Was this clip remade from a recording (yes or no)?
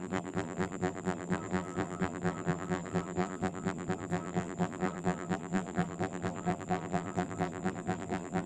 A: yes